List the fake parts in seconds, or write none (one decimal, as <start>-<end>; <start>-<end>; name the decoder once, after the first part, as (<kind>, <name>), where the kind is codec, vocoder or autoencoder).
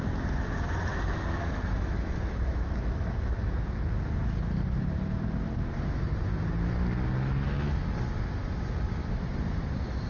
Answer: 0.9-3.4 (autoencoder, DAC-VAE)